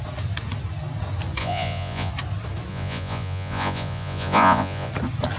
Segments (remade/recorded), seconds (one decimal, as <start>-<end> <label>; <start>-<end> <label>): 0.0-1.4 recorded; 1.4-2.1 remade; 2.1-2.7 recorded; 2.7-4.9 remade; 4.9-5.4 recorded